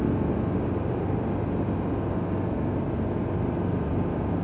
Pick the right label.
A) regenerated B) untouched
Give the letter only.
B